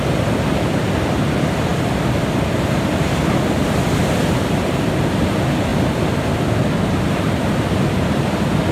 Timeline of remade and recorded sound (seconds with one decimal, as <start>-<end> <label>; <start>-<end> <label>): 0.0-8.7 recorded